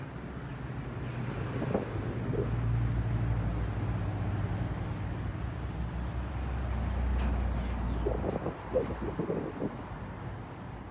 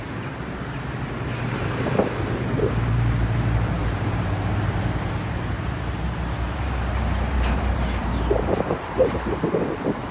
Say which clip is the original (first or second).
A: first